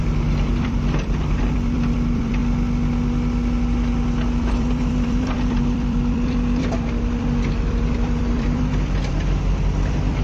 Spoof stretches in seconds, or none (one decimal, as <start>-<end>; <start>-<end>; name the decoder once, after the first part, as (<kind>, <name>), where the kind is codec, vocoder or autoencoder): 0.0-2.4 (vocoder, BigVGAN v2); 4.4-10.2